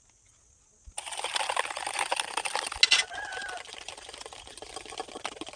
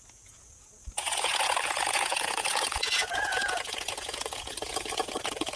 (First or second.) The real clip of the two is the first